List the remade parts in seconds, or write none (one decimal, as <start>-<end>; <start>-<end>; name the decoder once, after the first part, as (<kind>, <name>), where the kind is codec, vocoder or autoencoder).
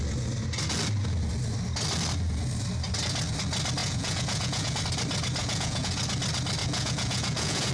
3.8-4.8 (vocoder, Vocos); 5.4-6.0; 6.6-7.7